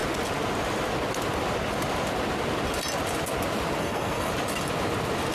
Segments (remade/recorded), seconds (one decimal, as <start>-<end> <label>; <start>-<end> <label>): 0.0-3.8 recorded; 3.8-4.3 remade; 4.3-5.3 recorded